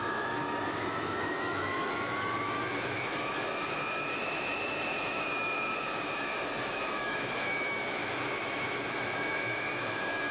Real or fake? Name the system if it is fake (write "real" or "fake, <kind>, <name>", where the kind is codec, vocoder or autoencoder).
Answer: fake, autoencoder, DAC-VAE